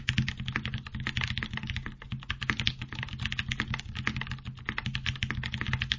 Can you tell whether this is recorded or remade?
recorded